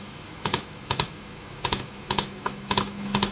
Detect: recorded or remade remade